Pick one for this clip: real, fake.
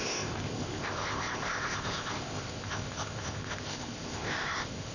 fake